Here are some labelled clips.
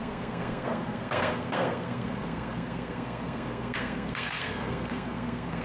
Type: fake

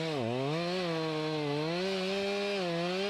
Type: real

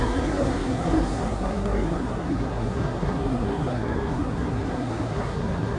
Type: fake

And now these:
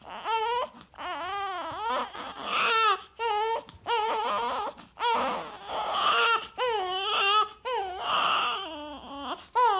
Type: real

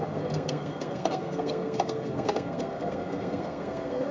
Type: fake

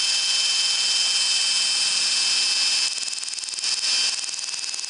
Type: real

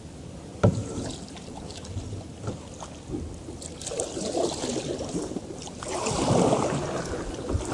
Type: real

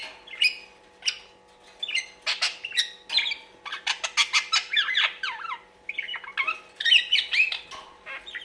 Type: real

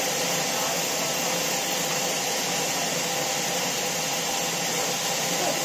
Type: real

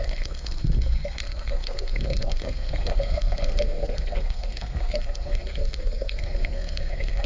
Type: fake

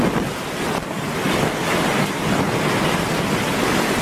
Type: real